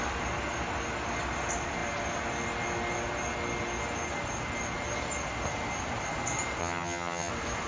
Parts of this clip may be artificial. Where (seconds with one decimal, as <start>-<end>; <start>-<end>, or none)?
6.6-7.3